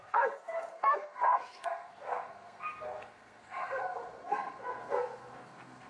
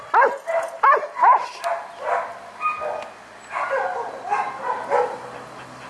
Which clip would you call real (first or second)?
second